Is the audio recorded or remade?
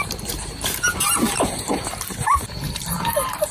remade